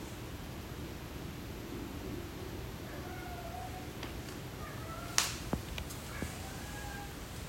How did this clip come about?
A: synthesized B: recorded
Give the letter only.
B